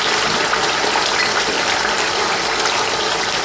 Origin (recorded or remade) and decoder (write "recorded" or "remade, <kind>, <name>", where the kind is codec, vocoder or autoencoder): recorded